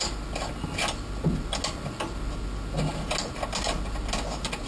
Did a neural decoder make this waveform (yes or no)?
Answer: no